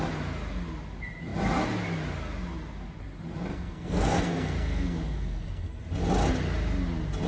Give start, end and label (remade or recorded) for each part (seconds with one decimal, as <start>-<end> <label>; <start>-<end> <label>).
0.0-3.5 recorded; 3.5-5.8 remade; 5.8-7.3 recorded